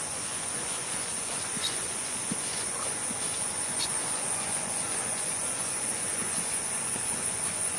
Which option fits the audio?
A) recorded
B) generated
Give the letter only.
B